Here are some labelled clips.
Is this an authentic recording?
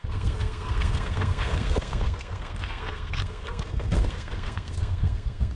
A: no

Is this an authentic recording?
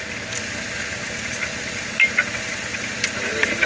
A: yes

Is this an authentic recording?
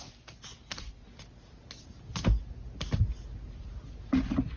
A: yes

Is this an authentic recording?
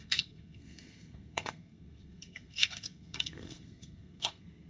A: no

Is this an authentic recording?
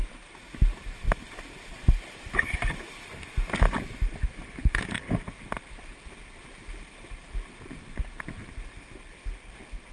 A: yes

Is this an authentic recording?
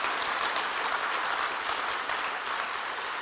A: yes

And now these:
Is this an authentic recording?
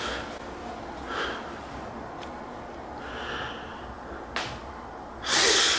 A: yes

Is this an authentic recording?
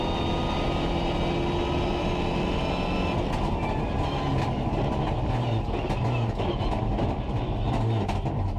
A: yes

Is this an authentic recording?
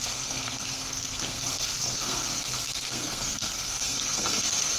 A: no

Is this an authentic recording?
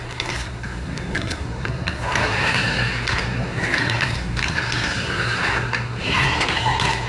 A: no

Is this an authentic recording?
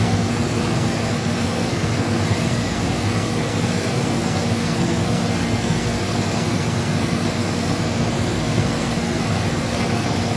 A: no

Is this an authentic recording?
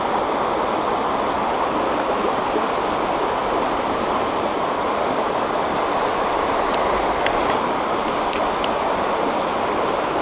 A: yes